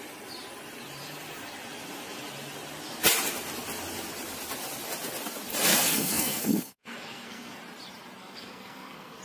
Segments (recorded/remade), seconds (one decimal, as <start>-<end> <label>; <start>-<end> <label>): 0.0-5.7 recorded; 5.7-7.6 remade; 7.6-8.2 recorded; 8.2-9.2 remade

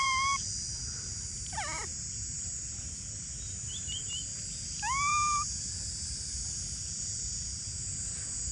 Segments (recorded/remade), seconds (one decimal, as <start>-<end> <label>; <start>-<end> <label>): 0.0-5.1 remade; 5.1-5.6 recorded; 5.6-8.5 remade

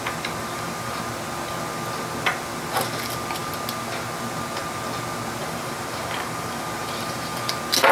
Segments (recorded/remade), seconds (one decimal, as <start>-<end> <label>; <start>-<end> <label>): 0.0-0.4 recorded; 0.4-1.0 remade; 1.0-5.4 recorded; 5.4-7.5 remade; 7.5-7.9 recorded

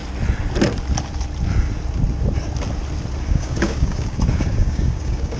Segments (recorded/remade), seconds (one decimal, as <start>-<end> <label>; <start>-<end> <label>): 0.0-3.2 recorded; 3.2-5.4 remade

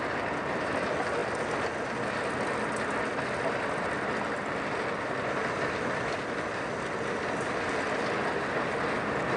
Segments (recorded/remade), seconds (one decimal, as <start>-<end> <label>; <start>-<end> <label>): 0.0-9.4 recorded

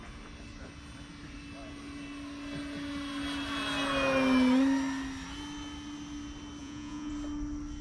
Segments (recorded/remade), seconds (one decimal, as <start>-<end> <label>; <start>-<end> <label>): 0.0-6.6 recorded; 6.6-7.1 remade; 7.1-7.8 recorded